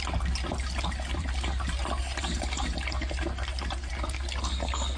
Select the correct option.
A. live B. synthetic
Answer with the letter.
A